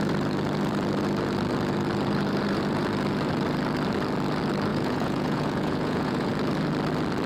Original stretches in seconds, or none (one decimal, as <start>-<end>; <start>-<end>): 0.0-4.7; 6.3-7.3